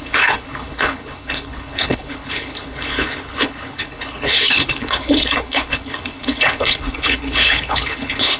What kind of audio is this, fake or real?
fake